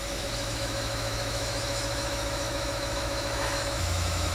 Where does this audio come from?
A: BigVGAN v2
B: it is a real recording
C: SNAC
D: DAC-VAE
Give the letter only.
D